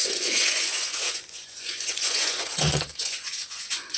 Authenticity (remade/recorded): remade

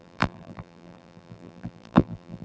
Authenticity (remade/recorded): remade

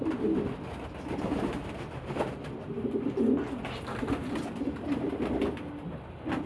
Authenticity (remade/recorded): recorded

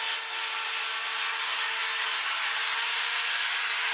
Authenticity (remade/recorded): recorded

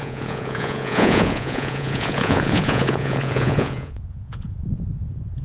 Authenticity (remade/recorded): remade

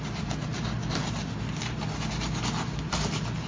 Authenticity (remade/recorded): recorded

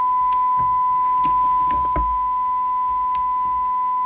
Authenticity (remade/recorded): remade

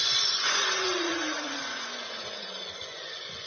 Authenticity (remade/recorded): remade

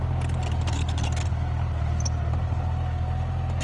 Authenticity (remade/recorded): recorded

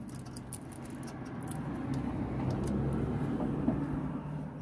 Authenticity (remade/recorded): recorded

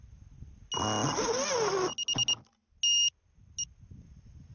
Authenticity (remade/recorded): recorded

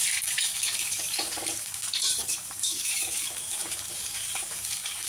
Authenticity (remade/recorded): remade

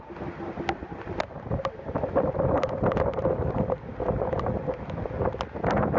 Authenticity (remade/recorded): recorded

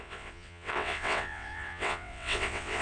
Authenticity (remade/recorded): remade